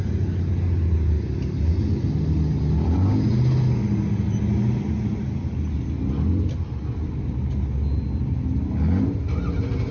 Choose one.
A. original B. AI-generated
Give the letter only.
A